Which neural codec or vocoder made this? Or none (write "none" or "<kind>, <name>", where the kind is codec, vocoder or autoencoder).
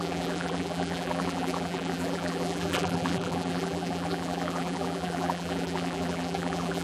vocoder, BigVGAN v2